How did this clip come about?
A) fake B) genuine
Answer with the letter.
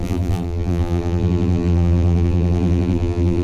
A